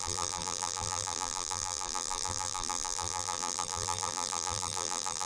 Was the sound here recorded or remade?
remade